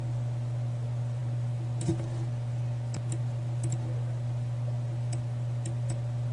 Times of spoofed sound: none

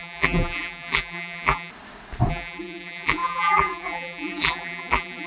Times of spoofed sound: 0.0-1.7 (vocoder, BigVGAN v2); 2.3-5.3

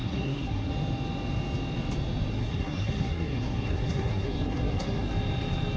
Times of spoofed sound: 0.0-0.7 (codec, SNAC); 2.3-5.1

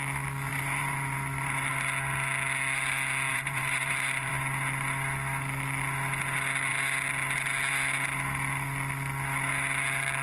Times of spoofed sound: 0.5-1.7 (vocoder, BigVGAN v2); 3.3-4.3

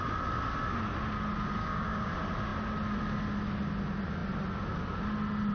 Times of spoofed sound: 1.6-2.1 (codec, DAC)

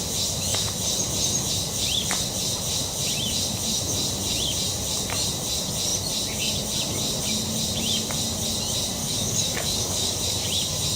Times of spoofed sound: 9.0-10.2 (codec, DAC)